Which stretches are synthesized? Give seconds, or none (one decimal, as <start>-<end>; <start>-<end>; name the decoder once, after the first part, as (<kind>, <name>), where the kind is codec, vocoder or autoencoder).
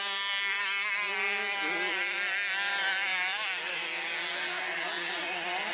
none